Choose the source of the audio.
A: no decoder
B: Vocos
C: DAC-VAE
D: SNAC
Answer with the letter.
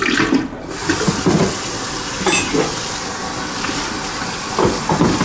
A